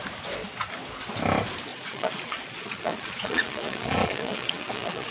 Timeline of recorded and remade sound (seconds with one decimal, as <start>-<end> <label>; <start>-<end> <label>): 0.0-1.7 recorded; 1.7-5.1 remade